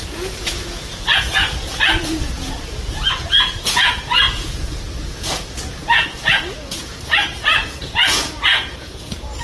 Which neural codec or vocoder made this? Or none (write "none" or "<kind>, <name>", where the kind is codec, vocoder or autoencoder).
vocoder, Vocos